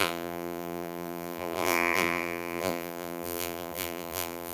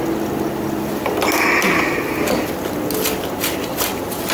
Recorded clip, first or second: second